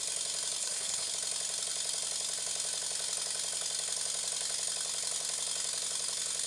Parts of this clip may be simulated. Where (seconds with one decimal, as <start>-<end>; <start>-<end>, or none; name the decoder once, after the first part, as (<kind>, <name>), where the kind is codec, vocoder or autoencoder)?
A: 0.6-1.1 (codec, HILCodec)